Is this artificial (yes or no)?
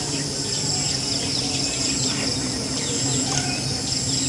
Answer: no